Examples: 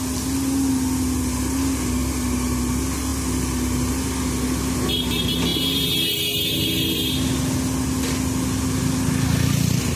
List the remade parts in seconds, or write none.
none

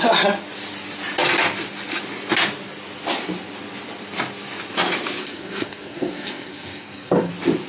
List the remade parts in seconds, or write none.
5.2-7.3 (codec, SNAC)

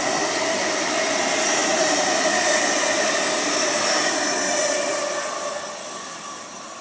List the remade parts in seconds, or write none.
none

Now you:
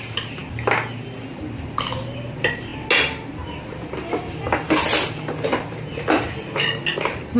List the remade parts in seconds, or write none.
none

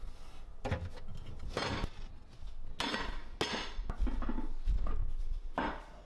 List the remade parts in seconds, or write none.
1.1-2.2 (vocoder, BigVGAN v2); 5.0-6.1

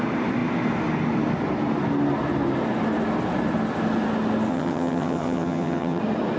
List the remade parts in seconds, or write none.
4.5-6.0 (vocoder, HiFi-GAN)